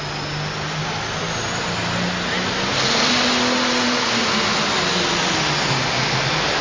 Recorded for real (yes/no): yes